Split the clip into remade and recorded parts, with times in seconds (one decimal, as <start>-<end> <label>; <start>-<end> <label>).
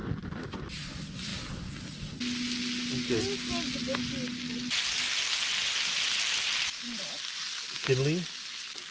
0.0-8.9 recorded